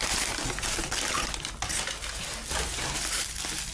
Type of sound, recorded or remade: recorded